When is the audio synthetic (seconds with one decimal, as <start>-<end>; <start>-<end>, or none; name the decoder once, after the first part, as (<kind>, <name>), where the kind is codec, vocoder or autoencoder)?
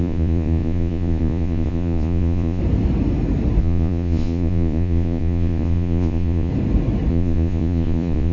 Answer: 0.0-2.6 (vocoder, Vocos); 3.6-6.5; 7.1-8.3